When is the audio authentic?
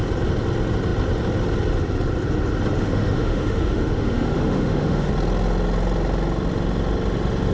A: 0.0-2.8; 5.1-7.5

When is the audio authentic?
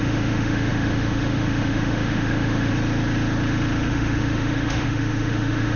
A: 2.7-3.9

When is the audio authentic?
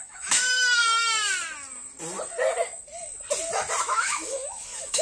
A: 0.8-3.8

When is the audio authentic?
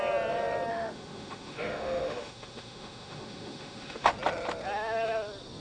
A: 0.0-0.7; 4.1-5.6